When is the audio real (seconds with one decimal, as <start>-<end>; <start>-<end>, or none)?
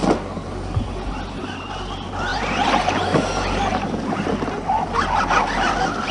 0.0-2.3; 2.9-3.7; 4.3-6.1